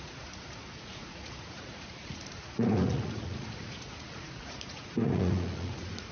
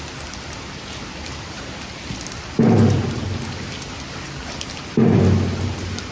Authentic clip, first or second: second